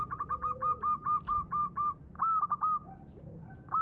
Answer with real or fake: real